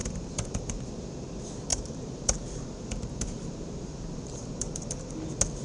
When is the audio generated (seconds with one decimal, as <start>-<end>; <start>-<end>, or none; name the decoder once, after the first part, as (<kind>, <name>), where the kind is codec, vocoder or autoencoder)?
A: 0.0-1.0 (vocoder, BigVGAN v2); 1.7-5.1